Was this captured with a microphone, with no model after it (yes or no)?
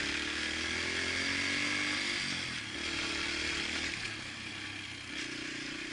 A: yes